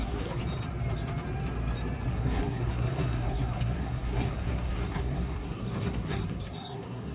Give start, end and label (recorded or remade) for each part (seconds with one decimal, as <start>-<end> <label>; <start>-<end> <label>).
0.0-0.4 remade; 0.4-2.1 recorded; 2.1-7.1 remade